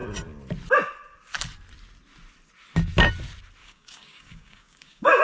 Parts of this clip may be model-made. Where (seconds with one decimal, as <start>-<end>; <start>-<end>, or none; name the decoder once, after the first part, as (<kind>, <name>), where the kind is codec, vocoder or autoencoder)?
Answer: 3.6-5.2 (codec, DAC)